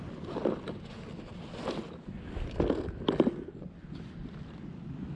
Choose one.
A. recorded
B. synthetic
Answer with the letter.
A